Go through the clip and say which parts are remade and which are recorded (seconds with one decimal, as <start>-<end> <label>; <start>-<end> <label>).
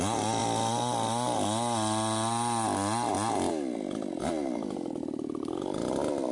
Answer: 0.0-6.3 recorded